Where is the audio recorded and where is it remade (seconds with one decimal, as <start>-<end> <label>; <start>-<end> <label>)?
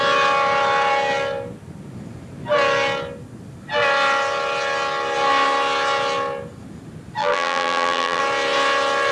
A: 0.0-7.2 recorded; 7.2-8.2 remade; 8.2-9.1 recorded